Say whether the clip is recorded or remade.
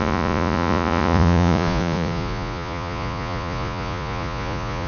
remade